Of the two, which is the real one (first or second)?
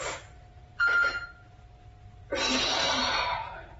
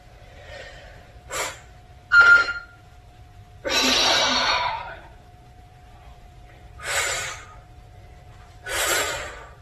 first